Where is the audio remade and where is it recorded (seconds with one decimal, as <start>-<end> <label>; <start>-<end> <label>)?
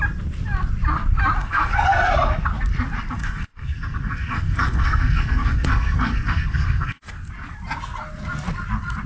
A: 0.0-1.4 recorded; 1.4-2.1 remade; 2.1-3.2 recorded; 3.2-7.3 remade; 7.3-9.1 recorded